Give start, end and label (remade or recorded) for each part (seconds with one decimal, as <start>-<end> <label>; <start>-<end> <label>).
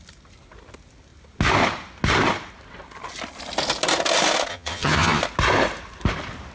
0.0-4.5 recorded; 4.5-5.2 remade; 5.2-6.5 recorded